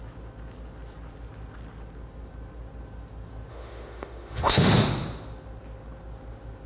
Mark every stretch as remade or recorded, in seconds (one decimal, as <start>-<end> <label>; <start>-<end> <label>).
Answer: 0.0-3.5 recorded; 3.5-4.7 remade; 4.7-6.7 recorded